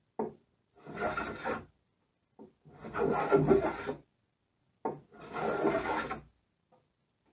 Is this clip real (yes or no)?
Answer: yes